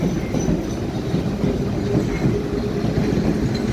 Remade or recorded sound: recorded